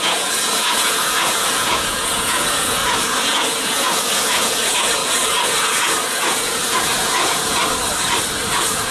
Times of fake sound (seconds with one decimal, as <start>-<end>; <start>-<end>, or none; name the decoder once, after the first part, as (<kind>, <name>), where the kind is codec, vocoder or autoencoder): 0.0-7.6 (vocoder, Vocos); 8.5-8.9